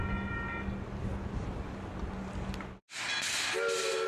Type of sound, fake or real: real